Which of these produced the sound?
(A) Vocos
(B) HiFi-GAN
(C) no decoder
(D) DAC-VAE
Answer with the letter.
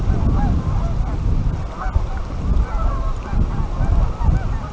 C